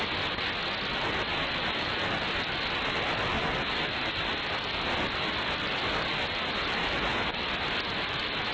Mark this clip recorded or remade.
recorded